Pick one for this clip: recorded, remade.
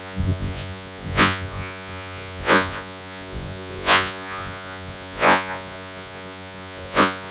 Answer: remade